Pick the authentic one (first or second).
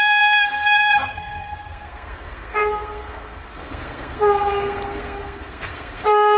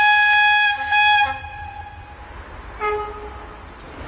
second